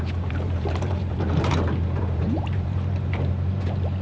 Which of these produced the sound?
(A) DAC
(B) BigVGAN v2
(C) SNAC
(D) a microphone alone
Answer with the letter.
B